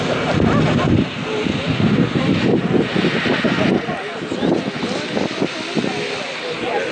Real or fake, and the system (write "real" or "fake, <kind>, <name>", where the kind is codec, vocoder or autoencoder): real